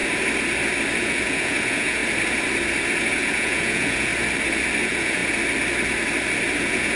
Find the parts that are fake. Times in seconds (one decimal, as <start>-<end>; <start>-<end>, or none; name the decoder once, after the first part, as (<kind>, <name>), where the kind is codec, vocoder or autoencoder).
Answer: 1.0-2.0 (vocoder, Vocos); 3.0-4.1; 4.8-5.2; 6.6-7.0